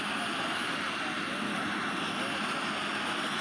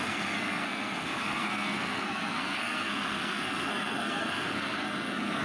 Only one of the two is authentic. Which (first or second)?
first